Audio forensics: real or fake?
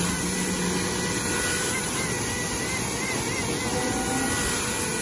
real